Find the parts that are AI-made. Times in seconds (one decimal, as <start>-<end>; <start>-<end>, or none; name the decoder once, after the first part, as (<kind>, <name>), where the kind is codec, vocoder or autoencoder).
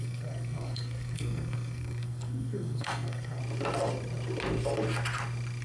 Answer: 0.0-3.4 (codec, SNAC)